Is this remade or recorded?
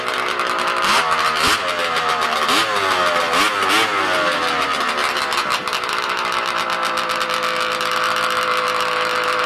recorded